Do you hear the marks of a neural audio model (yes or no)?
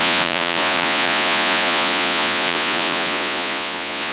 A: yes